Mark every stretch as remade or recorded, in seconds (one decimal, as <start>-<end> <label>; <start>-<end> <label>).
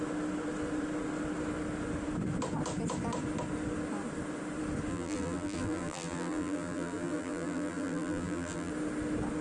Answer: 0.0-4.9 recorded; 4.9-8.7 remade; 8.7-9.4 recorded